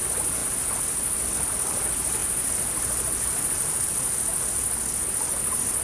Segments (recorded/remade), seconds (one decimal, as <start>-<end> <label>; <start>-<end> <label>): 0.0-5.8 recorded